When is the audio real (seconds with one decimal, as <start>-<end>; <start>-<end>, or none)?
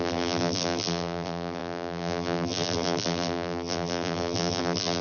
none